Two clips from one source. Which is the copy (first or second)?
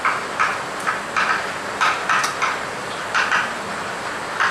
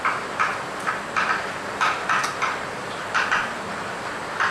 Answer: second